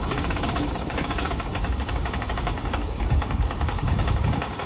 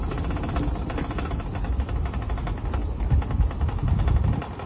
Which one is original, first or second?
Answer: second